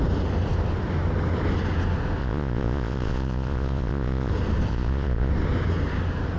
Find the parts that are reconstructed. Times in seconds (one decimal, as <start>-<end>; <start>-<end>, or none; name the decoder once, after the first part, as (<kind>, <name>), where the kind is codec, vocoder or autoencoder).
2.2-4.3 (vocoder, Vocos); 4.7-5.3